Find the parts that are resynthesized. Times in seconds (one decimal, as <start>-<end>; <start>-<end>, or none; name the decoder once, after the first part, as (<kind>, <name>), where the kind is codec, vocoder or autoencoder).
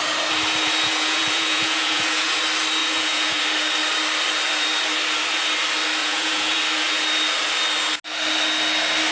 0.6-2.4 (vocoder, Vocos); 2.8-3.4; 6.0-6.6